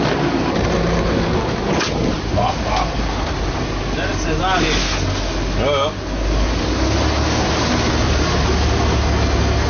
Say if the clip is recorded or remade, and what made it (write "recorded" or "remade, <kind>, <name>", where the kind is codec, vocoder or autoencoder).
recorded